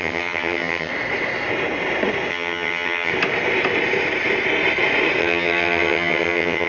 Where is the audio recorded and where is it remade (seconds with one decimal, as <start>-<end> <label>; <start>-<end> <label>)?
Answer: 0.0-0.9 remade; 0.9-2.3 recorded; 2.3-3.1 remade; 3.1-5.2 recorded; 5.2-6.7 remade